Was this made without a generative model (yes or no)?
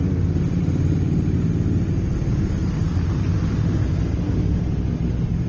yes